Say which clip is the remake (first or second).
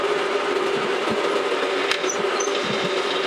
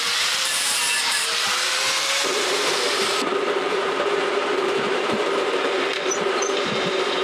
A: second